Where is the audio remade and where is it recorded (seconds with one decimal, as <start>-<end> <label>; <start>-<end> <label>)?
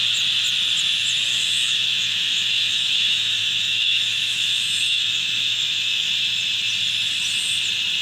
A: 0.0-1.3 recorded; 1.3-6.1 remade; 6.1-8.0 recorded